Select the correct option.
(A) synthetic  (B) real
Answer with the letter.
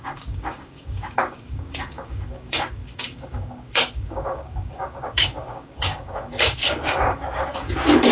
A